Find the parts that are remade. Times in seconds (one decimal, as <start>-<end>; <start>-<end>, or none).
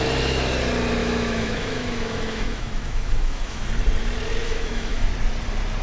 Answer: 1.0-3.7; 4.4-5.1